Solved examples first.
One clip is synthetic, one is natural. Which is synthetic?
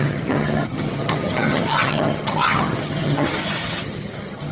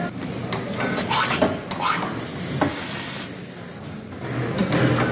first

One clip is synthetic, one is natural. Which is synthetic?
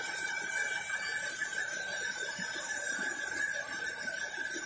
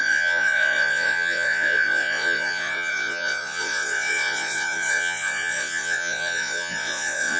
second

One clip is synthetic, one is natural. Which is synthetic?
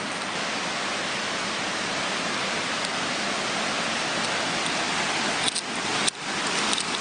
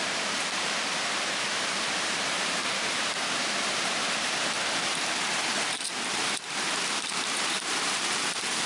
second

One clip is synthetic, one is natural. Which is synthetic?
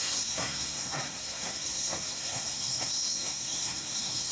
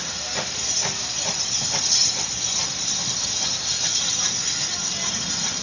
first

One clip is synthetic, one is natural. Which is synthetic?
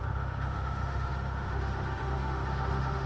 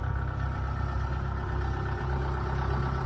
first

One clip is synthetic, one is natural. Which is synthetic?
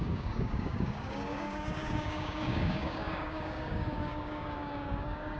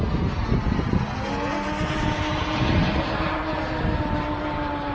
first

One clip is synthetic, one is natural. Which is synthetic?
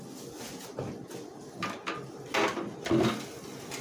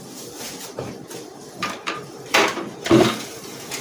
second